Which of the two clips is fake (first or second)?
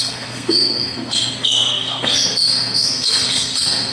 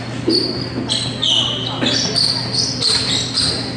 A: first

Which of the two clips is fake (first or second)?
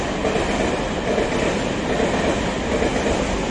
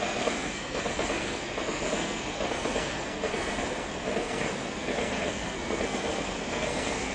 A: second